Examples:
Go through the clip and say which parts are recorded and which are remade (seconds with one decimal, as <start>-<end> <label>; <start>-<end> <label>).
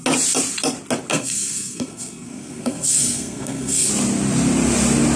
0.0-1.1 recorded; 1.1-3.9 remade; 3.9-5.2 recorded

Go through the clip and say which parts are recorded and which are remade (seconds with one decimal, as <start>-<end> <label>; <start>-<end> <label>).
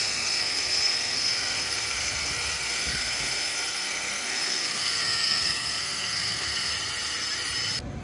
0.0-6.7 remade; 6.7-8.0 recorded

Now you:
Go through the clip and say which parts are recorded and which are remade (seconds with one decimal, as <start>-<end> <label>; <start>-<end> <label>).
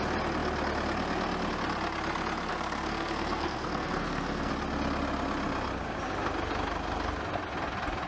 0.0-2.5 recorded; 2.5-4.5 remade; 4.5-8.1 recorded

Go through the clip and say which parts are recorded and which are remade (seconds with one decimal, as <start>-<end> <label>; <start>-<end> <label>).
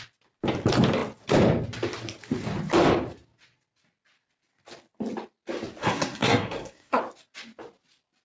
0.0-5.8 recorded; 5.8-7.0 remade; 7.0-8.2 recorded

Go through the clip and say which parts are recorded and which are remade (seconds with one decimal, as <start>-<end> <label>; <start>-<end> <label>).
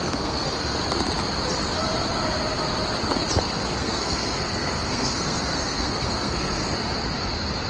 0.0-0.8 remade; 0.8-3.4 recorded; 3.4-6.6 remade; 6.6-7.7 recorded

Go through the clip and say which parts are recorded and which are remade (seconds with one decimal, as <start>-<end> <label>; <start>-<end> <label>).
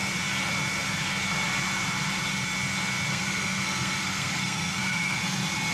0.0-3.1 recorded; 3.1-5.2 remade; 5.2-5.7 recorded